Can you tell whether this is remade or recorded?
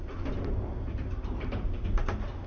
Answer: recorded